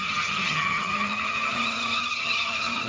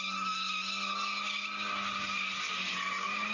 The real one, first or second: second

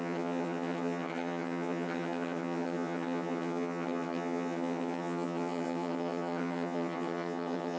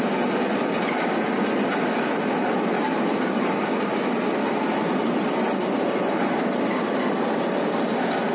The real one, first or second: second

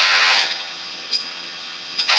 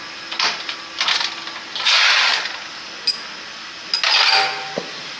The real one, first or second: second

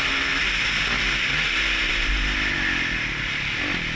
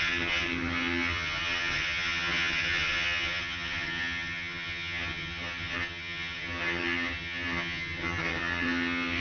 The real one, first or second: first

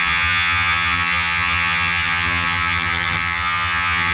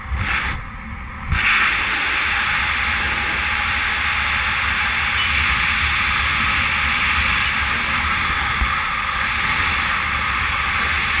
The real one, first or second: second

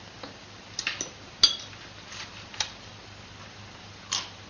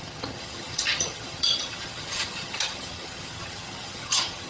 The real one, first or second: first